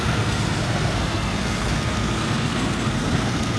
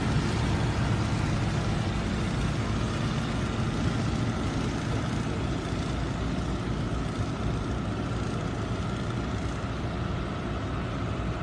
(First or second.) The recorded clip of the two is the second